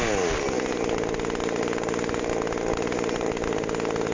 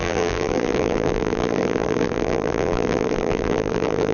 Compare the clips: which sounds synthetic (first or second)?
second